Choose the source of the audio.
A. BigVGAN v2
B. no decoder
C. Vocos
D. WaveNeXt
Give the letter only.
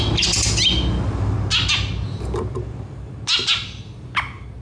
B